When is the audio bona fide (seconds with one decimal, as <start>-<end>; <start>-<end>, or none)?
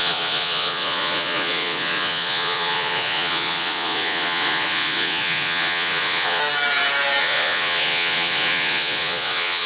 6.4-7.2